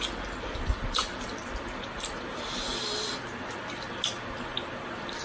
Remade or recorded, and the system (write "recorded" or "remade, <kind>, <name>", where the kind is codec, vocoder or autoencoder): recorded